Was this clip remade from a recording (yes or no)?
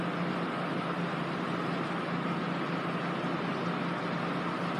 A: no